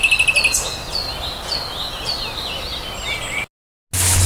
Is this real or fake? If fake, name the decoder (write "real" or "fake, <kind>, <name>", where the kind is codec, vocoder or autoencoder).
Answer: real